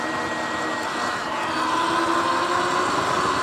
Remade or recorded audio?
recorded